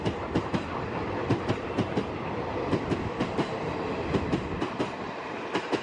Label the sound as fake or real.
fake